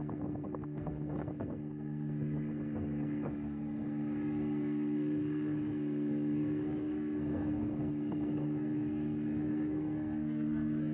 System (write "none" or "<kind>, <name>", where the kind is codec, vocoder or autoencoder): codec, SNAC